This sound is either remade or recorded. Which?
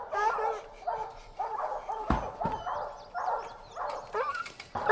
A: recorded